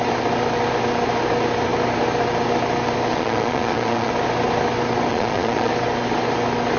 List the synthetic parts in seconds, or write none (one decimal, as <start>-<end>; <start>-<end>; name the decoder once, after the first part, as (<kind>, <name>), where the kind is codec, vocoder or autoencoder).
3.1-4.1 (vocoder, Vocos); 5.1-5.7

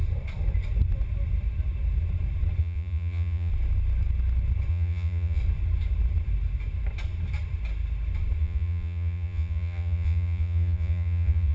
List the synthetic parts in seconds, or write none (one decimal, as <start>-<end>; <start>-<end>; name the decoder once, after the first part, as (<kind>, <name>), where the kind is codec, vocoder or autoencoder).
2.6-3.5 (vocoder, Vocos); 4.7-5.4; 8.4-11.5

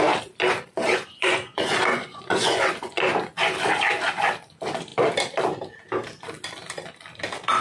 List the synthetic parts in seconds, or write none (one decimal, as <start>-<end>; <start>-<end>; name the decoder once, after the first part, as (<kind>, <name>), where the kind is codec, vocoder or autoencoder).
0.9-3.1 (vocoder, Vocos)

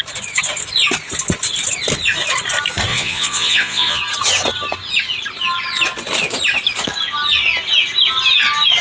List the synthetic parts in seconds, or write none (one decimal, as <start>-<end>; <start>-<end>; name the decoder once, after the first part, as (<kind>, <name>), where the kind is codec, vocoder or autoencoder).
2.9-4.0 (vocoder, Vocos)

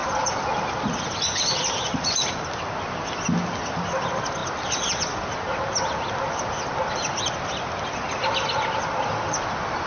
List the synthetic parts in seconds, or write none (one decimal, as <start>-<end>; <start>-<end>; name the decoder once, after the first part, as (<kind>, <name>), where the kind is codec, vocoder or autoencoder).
none

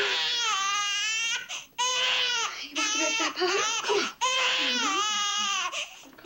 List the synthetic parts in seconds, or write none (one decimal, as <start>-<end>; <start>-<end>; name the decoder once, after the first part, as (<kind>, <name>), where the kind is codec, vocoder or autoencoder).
1.9-4.5 (vocoder, Vocos); 5.3-6.3

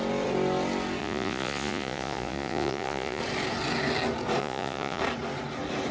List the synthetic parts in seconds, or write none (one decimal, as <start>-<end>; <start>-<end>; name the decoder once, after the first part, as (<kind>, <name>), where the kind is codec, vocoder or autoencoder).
1.0-3.2 (vocoder, Vocos); 4.4-5.0

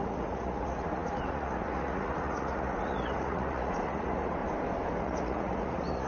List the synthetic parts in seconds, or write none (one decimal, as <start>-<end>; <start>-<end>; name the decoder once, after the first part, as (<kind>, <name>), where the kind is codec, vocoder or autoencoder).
0.0-4.4 (vocoder, Vocos); 5.0-6.1